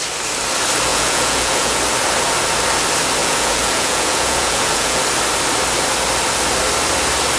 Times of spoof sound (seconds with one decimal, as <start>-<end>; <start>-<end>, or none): 0.9-1.8; 3.2-5.0